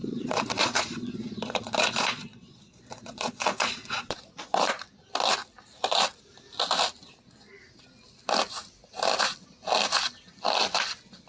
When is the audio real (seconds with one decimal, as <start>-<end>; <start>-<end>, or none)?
5.0-11.3